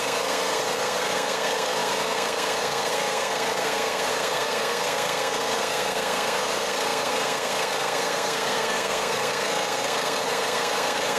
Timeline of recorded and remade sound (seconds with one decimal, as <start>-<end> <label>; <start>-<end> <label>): 0.0-11.2 remade